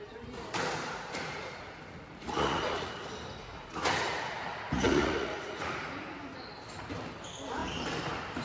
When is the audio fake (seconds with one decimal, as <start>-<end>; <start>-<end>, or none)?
0.8-3.1; 3.5-5.9